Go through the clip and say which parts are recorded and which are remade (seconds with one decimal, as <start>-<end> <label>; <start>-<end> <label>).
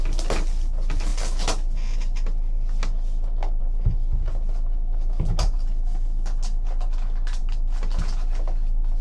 0.0-9.0 recorded